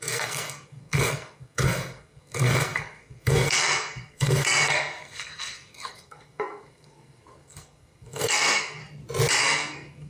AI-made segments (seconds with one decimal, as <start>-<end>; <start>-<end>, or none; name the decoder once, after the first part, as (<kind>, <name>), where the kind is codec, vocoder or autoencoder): 0.0-8.8 (codec, SNAC); 9.4-10.1